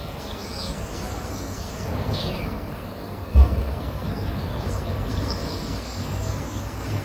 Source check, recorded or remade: remade